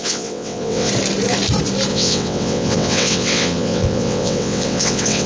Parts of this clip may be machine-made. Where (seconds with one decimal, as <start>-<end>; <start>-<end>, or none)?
0.0-0.9; 1.9-5.3